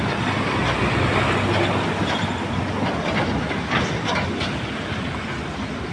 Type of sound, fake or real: real